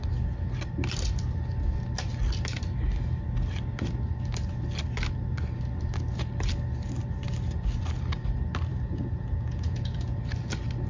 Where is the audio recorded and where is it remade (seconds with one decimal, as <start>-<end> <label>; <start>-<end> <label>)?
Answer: 0.0-8.7 recorded; 8.7-10.2 remade; 10.2-10.9 recorded